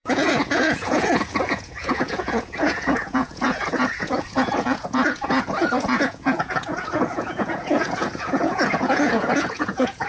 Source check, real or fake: fake